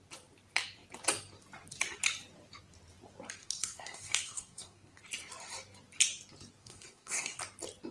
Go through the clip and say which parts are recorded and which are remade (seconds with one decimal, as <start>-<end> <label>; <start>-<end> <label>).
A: 0.0-3.4 recorded; 3.4-5.0 remade; 5.0-6.6 recorded; 6.6-7.4 remade; 7.4-7.9 recorded